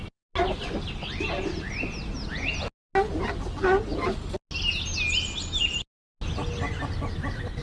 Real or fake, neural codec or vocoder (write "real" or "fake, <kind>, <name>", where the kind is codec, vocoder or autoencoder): real